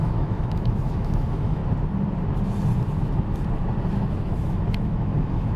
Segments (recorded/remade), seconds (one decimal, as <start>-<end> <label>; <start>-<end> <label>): 0.0-1.6 remade; 1.6-4.2 recorded; 4.2-5.6 remade

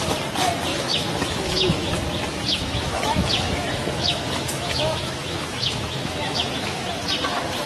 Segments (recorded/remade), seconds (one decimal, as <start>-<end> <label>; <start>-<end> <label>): 0.0-0.7 recorded; 0.7-1.9 remade; 1.9-2.3 recorded; 2.3-6.9 remade; 6.9-7.7 recorded

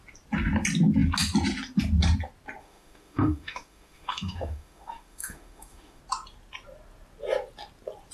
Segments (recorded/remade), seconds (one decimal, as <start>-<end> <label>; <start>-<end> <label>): 0.0-2.6 recorded; 2.6-6.0 remade; 6.0-8.1 recorded

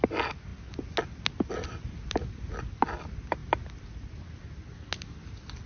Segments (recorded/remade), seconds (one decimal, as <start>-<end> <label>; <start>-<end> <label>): 0.0-5.7 recorded

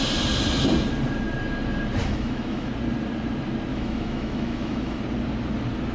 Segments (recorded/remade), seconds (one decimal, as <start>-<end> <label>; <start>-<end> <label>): 0.0-2.0 recorded; 2.0-2.7 remade; 2.7-3.7 recorded; 3.7-5.0 remade; 5.0-5.9 recorded

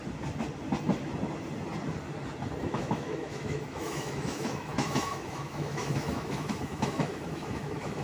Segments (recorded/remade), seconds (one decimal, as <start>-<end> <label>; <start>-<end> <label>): 0.0-2.6 recorded; 2.6-8.0 remade

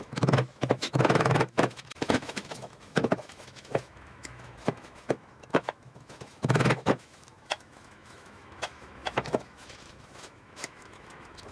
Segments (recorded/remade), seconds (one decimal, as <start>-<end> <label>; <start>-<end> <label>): 0.0-11.5 remade

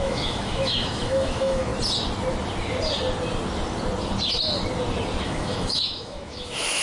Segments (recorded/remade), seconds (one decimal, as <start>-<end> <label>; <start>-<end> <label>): 0.0-1.7 remade; 1.7-5.2 recorded; 5.2-6.8 remade